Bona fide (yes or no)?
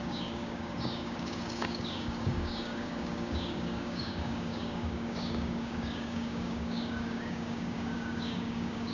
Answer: no